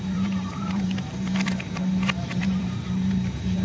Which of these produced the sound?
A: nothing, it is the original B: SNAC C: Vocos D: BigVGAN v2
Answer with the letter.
D